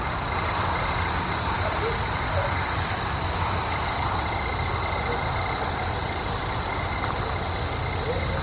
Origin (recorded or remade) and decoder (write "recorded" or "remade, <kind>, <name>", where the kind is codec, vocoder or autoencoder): recorded